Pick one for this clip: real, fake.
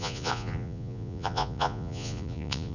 fake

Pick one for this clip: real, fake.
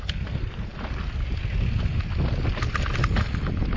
real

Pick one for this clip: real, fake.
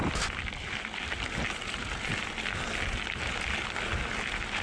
real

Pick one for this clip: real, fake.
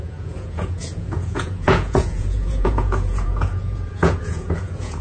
fake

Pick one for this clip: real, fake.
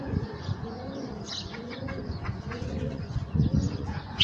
fake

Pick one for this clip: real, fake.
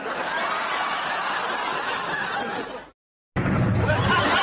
real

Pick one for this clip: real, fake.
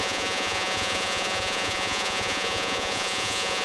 fake